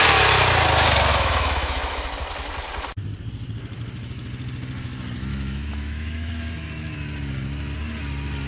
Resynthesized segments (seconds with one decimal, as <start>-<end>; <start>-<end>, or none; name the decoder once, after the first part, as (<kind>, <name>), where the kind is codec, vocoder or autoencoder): 1.1-2.0 (autoencoder, DAC-VAE); 5.3-6.3